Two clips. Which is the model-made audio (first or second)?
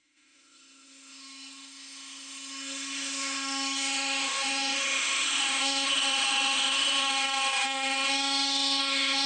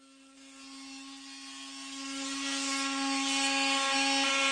first